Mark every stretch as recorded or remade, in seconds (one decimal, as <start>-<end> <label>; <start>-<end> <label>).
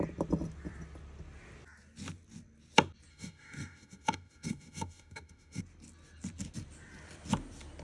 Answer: 0.0-3.1 recorded; 3.1-5.6 remade; 5.6-7.8 recorded